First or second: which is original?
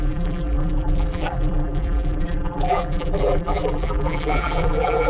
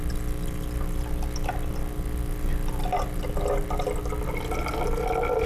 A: second